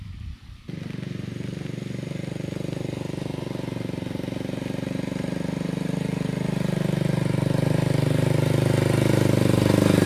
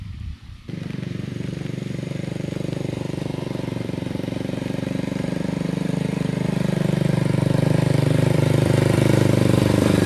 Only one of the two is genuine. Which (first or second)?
first